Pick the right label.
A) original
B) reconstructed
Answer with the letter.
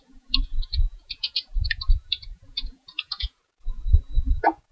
B